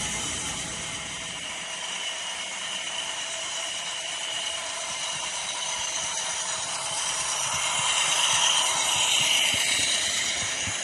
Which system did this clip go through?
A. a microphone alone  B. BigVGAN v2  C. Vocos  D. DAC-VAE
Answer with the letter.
B